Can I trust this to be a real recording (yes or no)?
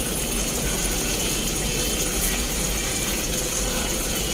no